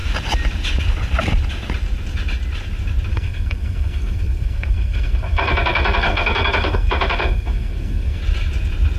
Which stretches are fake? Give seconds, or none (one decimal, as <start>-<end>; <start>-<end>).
3.1-8.2